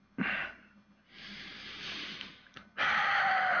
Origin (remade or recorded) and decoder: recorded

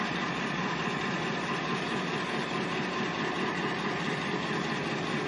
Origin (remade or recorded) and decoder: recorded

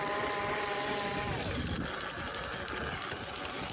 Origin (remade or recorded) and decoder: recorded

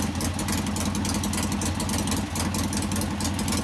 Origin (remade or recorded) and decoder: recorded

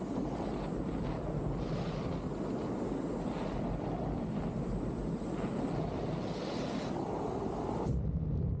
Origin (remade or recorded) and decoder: recorded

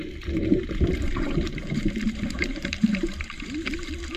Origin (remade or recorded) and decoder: remade, vocoder, BigVGAN v2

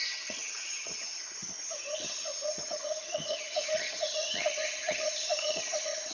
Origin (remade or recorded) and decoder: remade, vocoder, HiFi-GAN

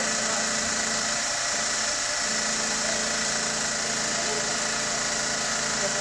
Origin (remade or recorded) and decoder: recorded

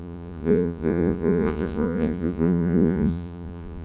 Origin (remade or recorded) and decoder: remade, vocoder, Vocos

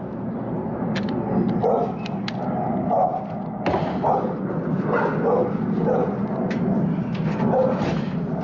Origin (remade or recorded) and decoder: recorded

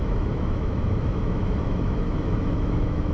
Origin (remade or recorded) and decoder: remade, autoencoder, DAC-VAE